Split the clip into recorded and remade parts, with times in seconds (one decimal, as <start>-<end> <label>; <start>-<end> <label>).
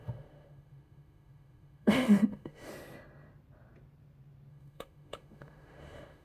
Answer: 0.0-2.7 remade; 2.7-4.5 recorded; 4.5-6.2 remade